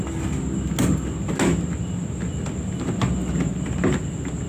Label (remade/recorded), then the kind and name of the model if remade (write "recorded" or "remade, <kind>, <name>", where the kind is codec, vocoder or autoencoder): recorded